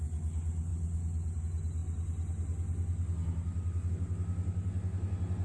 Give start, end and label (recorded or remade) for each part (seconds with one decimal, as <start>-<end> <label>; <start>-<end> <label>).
0.0-5.4 recorded